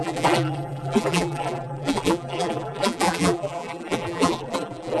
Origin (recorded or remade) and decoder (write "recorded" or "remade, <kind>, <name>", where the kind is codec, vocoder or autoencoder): remade, vocoder, BigVGAN v2